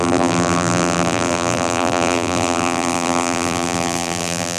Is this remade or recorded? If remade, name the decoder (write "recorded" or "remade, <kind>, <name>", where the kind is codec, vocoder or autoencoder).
remade, vocoder, BigVGAN v2